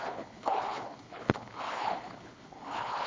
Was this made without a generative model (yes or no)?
no